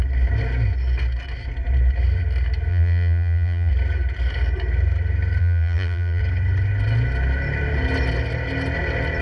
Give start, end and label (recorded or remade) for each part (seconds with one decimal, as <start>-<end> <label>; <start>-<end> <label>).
0.0-2.7 recorded; 2.7-3.7 remade; 3.7-5.4 recorded; 5.4-6.2 remade; 6.2-9.2 recorded